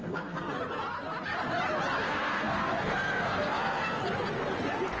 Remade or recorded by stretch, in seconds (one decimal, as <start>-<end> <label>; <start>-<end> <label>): 0.0-0.6 remade; 0.6-2.0 recorded; 2.0-4.0 remade; 4.0-5.0 recorded